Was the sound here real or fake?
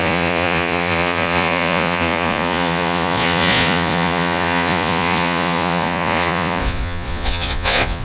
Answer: fake